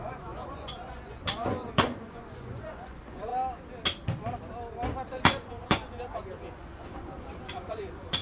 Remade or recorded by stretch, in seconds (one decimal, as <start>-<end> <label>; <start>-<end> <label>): 0.0-3.3 remade; 3.3-5.1 recorded; 5.1-8.2 remade